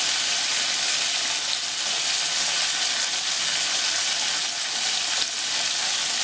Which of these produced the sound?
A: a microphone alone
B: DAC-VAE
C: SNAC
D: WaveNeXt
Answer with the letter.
A